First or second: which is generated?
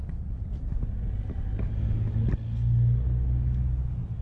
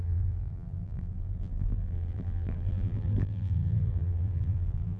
second